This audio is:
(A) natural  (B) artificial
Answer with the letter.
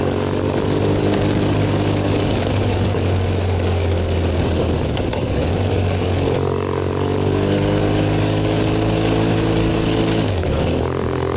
B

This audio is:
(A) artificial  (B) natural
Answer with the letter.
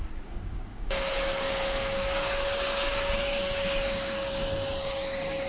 A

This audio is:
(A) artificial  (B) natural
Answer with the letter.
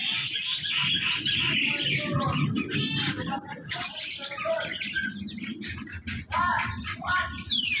B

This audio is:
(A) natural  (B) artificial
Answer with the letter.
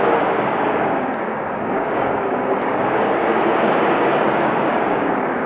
B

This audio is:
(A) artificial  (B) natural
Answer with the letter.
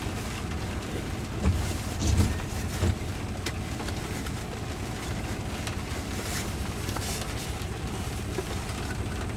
B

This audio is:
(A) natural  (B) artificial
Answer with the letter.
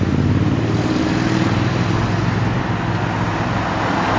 A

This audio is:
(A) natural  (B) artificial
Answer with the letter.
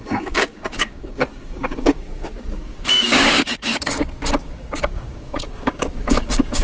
B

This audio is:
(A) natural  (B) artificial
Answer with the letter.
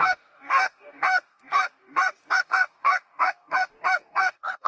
B